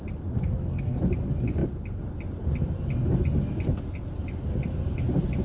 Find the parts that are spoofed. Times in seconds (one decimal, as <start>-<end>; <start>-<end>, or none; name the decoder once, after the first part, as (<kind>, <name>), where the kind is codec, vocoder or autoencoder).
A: 0.4-1.0 (codec, SNAC)